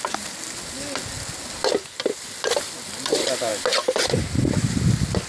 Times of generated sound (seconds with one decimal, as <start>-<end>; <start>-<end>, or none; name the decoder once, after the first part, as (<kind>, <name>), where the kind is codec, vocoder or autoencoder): none

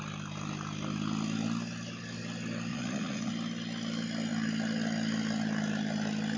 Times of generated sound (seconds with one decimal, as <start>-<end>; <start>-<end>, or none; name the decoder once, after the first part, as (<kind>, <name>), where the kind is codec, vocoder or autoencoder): 2.7-3.3 (vocoder, Vocos)

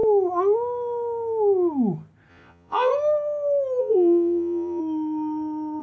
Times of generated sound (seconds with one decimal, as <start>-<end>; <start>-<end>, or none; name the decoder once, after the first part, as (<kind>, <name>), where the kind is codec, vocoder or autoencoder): 2.3-2.9 (vocoder, Vocos); 3.8-4.8

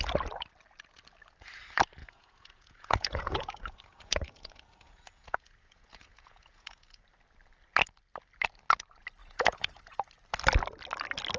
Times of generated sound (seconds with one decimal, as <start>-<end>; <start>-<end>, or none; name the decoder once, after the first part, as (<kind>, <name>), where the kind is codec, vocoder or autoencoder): 2.0-7.0 (vocoder, Vocos); 9.2-10.1